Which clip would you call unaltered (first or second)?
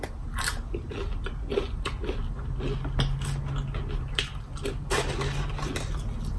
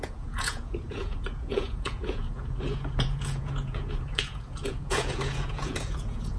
first